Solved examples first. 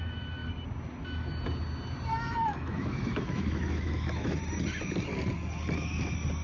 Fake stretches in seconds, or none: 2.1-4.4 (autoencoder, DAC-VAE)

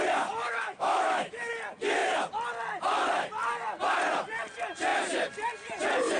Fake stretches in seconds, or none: 0.4-1.5 (autoencoder, DAC-VAE)

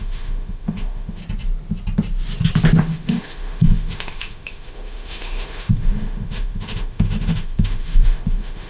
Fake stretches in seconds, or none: 0.0-1.2 (autoencoder, DAC-VAE); 2.8-8.7